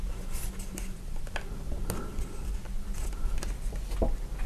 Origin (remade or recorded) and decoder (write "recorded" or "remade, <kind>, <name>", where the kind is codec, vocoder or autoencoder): recorded